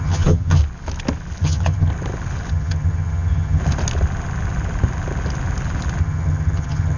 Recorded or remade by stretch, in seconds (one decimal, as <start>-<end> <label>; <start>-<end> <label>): 0.0-0.6 remade; 0.6-1.4 recorded; 1.4-1.9 remade; 1.9-2.5 recorded; 2.5-3.6 remade; 3.6-6.0 recorded; 6.0-7.0 remade